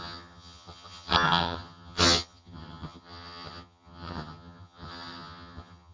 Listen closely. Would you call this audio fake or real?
fake